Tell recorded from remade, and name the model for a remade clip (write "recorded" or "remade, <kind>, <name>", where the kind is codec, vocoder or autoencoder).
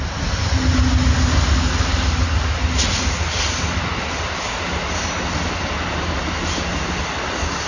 recorded